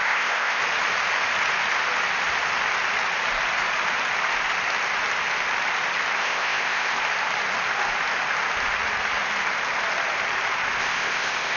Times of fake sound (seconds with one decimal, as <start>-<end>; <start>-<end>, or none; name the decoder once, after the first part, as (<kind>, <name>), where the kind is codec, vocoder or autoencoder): 0.0-0.6 (codec, ZipCodec); 6.2-7.0; 10.8-11.6